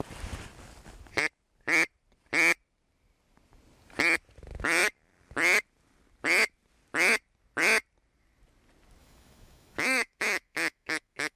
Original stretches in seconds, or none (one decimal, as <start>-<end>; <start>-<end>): 0.0-9.0